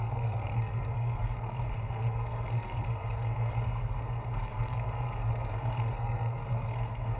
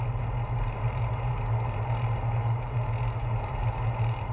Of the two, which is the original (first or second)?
second